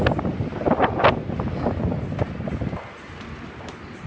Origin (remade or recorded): recorded